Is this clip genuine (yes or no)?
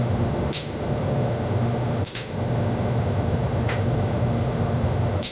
no